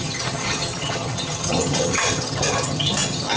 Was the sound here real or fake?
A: fake